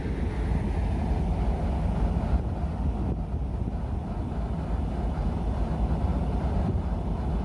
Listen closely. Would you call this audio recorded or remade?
recorded